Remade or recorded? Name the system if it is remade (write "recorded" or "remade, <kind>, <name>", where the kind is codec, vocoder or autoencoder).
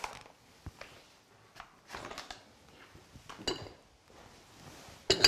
recorded